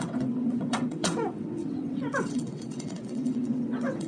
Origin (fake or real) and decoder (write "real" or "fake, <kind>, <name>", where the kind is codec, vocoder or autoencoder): fake, vocoder, WaveNeXt